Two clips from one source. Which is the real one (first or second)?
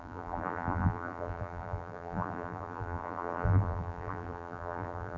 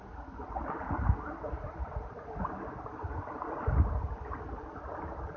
second